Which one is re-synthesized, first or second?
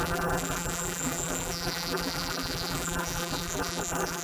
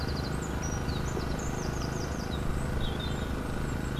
first